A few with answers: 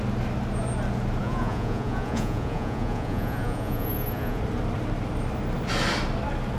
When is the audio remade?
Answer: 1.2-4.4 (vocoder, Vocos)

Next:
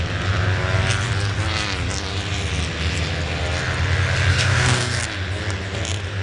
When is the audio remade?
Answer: 4.3-5.0 (codec, DAC)

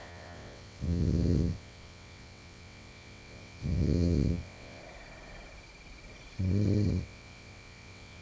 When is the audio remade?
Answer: 0.0-4.8 (vocoder, WaveNeXt); 7.0-8.2

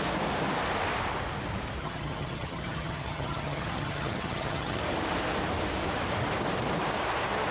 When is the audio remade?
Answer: 1.8-4.8 (vocoder, HiFi-GAN)

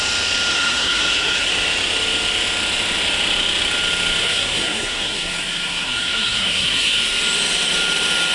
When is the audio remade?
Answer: 0.5-1.5 (codec, SNAC); 4.2-7.0

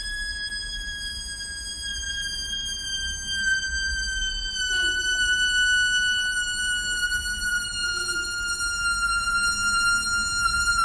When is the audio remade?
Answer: 0.0-3.9 (vocoder, BigVGAN v2); 4.4-10.8